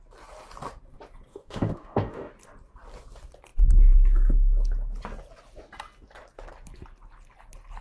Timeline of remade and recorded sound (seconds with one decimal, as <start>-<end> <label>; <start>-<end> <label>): 0.0-1.3 recorded; 1.3-2.3 remade; 2.3-7.8 recorded